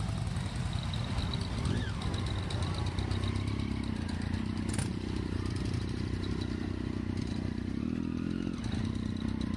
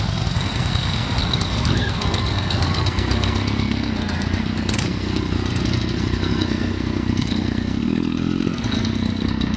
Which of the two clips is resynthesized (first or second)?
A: second